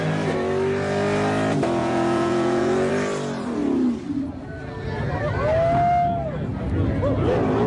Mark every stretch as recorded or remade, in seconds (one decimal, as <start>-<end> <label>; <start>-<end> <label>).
0.0-1.8 recorded; 1.8-2.9 remade; 2.9-7.7 recorded